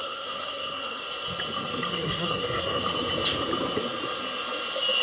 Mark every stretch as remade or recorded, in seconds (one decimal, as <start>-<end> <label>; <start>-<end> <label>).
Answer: 0.0-1.0 remade; 1.0-1.9 recorded; 1.9-2.8 remade; 2.8-5.0 recorded